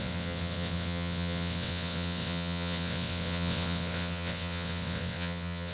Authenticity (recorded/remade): remade